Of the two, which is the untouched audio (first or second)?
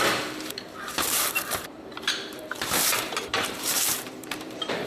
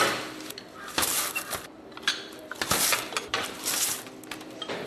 second